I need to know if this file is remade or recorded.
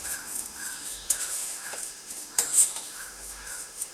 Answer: remade